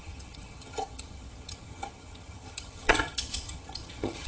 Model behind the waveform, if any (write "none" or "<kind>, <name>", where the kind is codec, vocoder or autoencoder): vocoder, HiFi-GAN